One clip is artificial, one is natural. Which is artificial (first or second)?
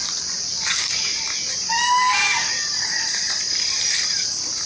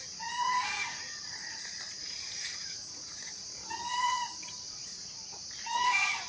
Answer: second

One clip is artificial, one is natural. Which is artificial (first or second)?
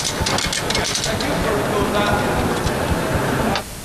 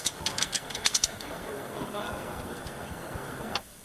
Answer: second